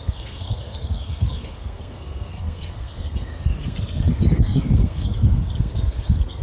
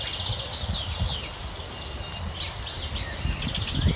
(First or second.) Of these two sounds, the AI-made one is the first